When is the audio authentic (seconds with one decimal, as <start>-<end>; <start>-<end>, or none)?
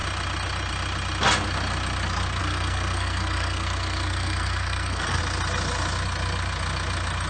0.0-2.4; 5.2-7.3